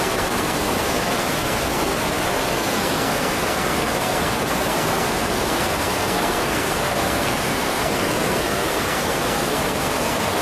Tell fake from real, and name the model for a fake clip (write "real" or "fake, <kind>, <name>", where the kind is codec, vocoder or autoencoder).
fake, codec, SNAC